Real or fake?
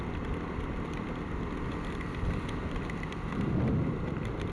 fake